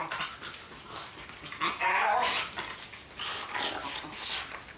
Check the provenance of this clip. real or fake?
real